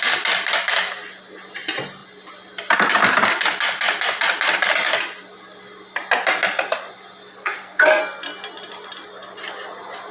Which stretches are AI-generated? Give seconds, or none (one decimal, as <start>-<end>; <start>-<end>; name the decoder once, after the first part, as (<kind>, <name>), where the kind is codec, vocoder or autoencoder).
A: 7.4-8.0 (codec, SNAC)